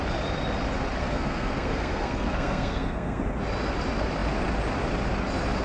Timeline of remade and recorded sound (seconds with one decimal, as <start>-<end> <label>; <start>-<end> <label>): 0.0-1.0 recorded; 1.0-3.2 remade; 3.2-5.6 recorded